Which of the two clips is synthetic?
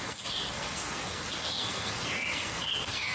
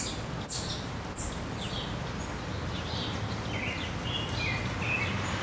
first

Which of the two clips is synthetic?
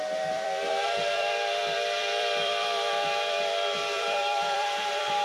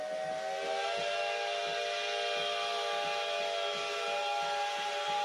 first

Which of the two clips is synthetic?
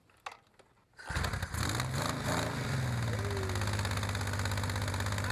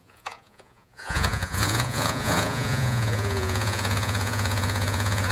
second